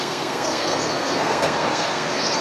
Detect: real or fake fake